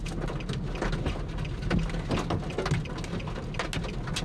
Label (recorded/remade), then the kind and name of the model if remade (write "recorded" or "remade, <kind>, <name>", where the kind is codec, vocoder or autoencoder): recorded